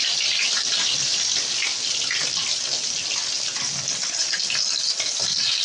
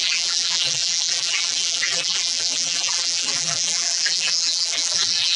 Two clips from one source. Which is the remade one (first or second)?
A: second